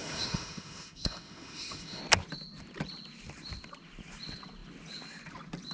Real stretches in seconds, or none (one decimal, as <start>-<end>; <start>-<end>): 2.0-5.7